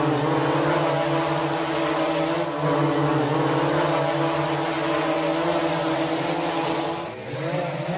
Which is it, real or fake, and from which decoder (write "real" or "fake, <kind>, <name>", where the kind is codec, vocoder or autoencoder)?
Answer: real